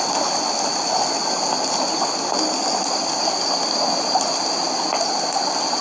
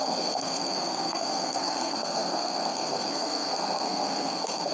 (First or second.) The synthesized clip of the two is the second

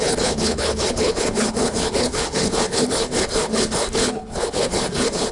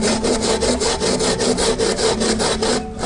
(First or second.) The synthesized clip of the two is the first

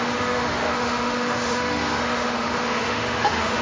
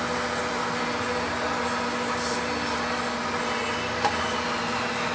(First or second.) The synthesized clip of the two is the first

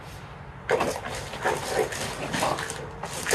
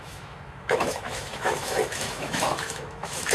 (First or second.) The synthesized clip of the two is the second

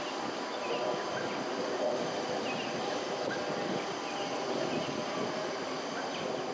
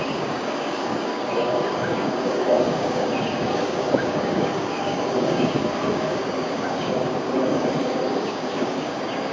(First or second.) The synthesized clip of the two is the second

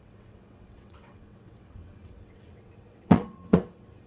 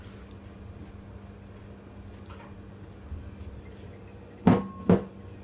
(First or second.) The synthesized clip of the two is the first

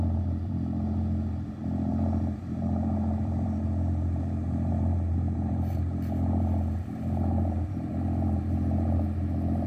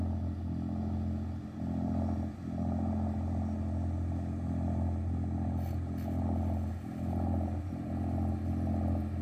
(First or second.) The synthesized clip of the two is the first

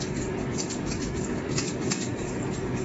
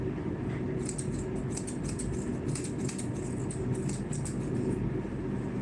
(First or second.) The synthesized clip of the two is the first